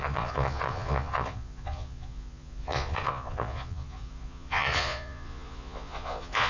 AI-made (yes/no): yes